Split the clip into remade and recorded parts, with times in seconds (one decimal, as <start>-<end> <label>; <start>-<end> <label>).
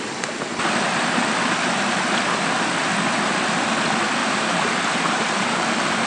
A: 0.0-4.2 recorded; 4.2-4.7 remade; 4.7-6.1 recorded